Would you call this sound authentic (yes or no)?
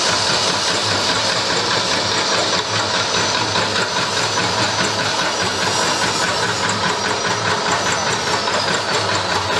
yes